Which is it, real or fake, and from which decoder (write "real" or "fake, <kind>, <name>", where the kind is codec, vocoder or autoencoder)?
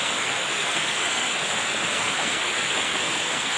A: fake, codec, SNAC